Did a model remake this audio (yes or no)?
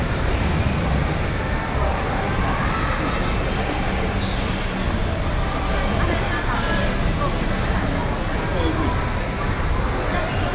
no